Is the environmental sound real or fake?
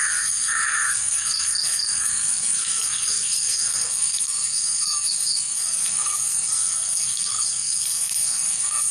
fake